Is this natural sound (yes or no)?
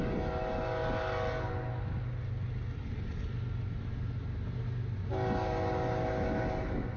yes